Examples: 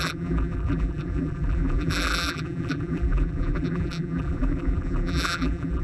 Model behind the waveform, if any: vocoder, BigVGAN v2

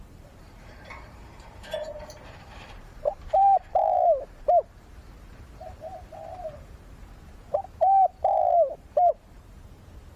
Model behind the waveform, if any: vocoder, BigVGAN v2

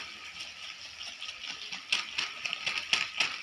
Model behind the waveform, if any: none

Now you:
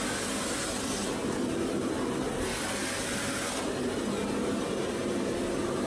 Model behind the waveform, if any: none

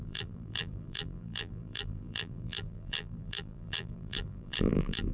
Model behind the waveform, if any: vocoder, BigVGAN v2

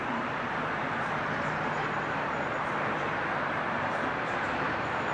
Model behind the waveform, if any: vocoder, BigVGAN v2